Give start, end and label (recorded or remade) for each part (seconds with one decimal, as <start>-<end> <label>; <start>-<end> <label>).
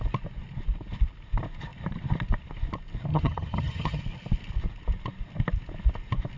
0.0-3.1 recorded; 3.1-4.0 remade; 4.0-6.4 recorded